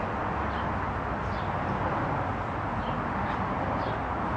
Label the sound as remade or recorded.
recorded